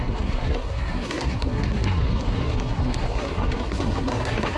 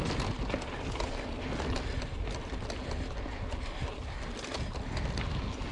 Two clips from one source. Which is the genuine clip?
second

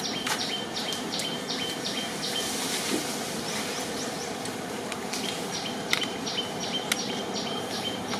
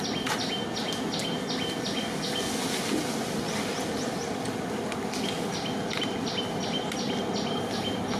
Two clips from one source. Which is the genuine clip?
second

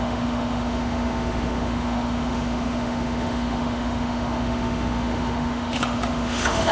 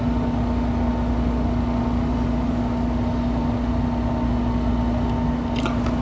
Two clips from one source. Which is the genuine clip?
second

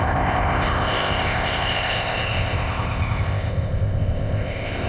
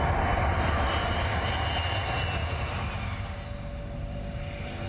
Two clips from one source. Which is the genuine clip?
second